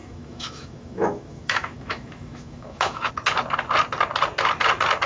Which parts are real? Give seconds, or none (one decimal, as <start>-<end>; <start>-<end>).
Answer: 3.1-5.1